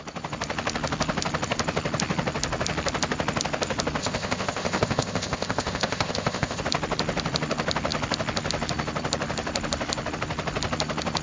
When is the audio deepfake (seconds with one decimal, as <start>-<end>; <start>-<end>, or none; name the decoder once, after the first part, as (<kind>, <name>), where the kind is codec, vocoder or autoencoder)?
4.0-6.6 (codec, ZipCodec)